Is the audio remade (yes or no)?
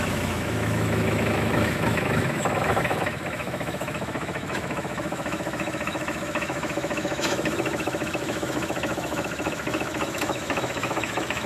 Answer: yes